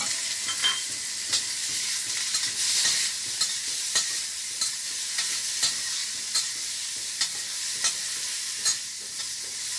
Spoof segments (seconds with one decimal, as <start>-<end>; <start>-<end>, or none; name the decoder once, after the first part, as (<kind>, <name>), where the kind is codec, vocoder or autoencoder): 0.6-1.9 (vocoder, BigVGAN v2); 6.0-7.2